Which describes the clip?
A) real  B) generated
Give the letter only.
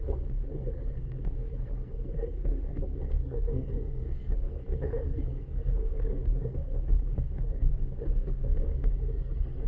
B